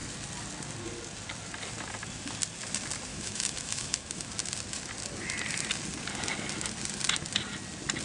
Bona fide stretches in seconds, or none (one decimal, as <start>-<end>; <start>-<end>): 0.0-3.1; 4.3-8.0